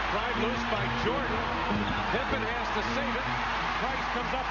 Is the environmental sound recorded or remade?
recorded